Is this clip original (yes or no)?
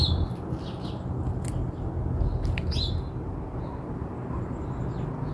yes